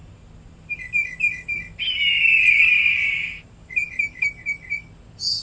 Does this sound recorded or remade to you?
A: recorded